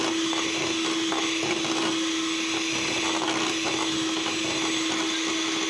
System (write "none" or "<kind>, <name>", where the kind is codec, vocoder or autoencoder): none